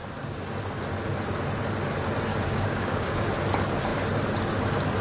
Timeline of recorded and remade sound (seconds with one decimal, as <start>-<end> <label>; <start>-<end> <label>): 0.0-2.3 recorded; 2.3-3.2 remade; 3.2-5.0 recorded